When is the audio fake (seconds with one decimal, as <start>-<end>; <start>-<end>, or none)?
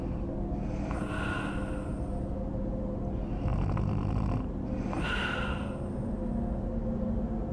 none